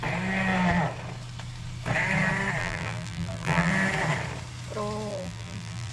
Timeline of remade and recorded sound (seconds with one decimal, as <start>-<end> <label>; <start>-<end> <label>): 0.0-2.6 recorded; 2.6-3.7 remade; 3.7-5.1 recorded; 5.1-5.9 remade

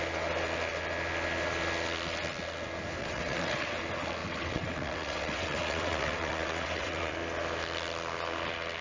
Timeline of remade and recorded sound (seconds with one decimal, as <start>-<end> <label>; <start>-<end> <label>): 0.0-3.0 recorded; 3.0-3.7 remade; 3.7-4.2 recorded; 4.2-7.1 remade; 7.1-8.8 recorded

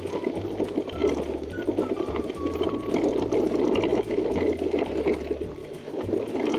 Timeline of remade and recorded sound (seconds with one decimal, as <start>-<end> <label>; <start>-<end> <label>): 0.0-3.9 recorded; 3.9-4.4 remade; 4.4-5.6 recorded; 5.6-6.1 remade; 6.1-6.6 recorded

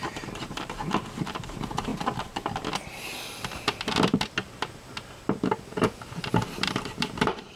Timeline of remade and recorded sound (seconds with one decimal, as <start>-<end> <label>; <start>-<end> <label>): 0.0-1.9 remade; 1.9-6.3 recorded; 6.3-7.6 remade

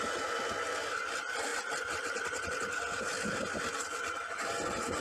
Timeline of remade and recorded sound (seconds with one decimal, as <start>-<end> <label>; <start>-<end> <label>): 0.0-5.0 recorded

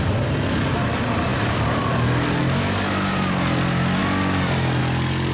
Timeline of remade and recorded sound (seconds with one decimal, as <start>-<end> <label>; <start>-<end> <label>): 0.0-1.3 recorded; 1.3-2.4 remade; 2.4-4.0 recorded; 4.0-4.8 remade; 4.8-5.3 recorded